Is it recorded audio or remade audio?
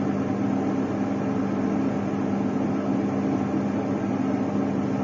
recorded